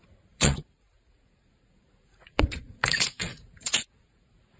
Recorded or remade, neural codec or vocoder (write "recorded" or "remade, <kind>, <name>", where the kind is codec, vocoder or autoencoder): remade, vocoder, Vocos